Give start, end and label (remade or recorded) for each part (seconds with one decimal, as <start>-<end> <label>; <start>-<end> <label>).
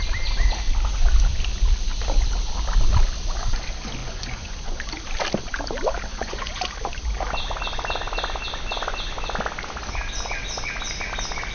0.0-4.0 recorded; 4.0-4.8 remade; 4.8-6.1 recorded; 6.1-6.6 remade; 6.6-11.5 recorded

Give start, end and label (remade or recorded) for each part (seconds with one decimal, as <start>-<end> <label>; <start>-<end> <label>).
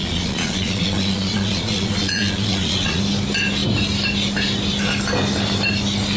0.0-3.0 remade; 3.0-6.2 recorded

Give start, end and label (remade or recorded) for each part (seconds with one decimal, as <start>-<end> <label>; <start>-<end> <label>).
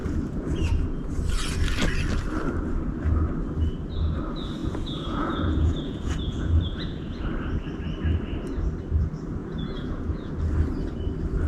0.0-1.0 remade; 1.0-4.6 recorded; 4.6-7.2 remade; 7.2-9.4 recorded; 9.4-10.3 remade; 10.3-11.5 recorded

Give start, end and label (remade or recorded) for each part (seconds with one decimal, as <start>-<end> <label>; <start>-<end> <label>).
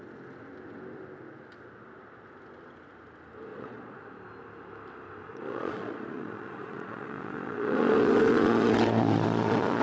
0.0-3.5 recorded; 3.5-4.1 remade; 4.1-5.3 recorded; 5.3-9.8 remade